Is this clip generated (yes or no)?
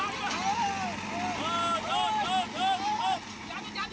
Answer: no